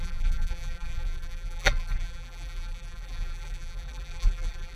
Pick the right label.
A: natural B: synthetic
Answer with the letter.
B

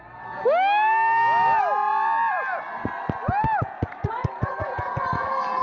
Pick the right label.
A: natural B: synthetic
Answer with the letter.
A